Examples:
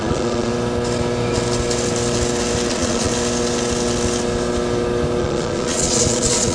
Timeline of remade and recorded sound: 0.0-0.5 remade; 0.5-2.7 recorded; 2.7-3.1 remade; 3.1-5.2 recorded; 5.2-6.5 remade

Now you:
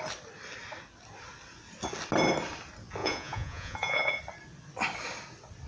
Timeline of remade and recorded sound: 0.0-3.0 recorded; 3.0-4.2 remade; 4.2-5.7 recorded

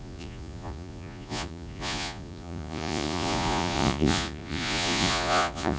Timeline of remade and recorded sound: 0.0-5.8 remade